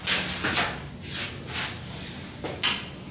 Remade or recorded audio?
recorded